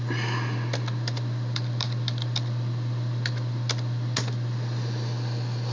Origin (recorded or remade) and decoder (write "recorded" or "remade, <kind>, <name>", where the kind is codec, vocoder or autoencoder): recorded